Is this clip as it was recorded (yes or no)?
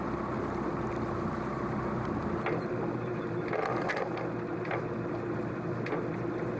yes